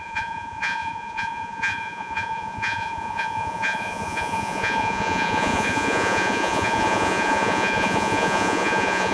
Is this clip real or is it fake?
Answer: fake